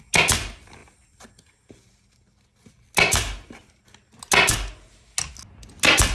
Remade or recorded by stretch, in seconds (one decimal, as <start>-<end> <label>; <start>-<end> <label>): 0.0-6.1 recorded